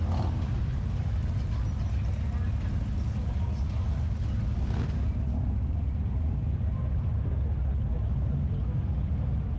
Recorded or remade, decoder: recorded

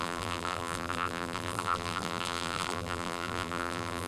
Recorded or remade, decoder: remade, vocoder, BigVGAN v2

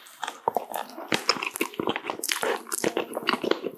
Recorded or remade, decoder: recorded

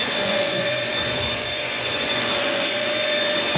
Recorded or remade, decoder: remade, vocoder, Vocos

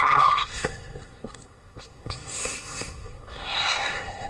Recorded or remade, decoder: remade, codec, SNAC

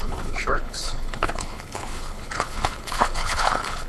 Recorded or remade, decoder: remade, codec, HILCodec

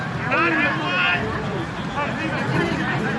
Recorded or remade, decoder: recorded